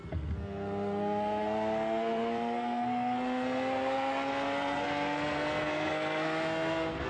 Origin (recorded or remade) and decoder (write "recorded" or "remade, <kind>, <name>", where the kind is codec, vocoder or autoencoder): remade, codec, SNAC